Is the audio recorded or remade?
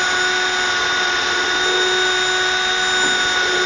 recorded